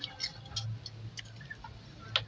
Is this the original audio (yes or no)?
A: yes